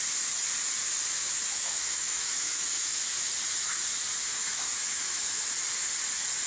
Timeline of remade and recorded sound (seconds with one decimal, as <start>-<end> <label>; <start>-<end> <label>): 0.0-1.5 recorded; 1.5-3.3 remade; 3.3-4.2 recorded; 4.2-5.4 remade; 5.4-6.5 recorded